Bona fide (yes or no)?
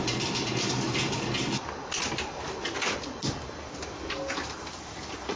yes